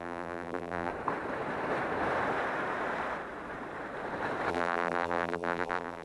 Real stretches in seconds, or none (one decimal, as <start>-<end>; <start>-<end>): 0.9-4.5